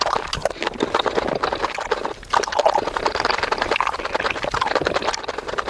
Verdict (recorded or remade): recorded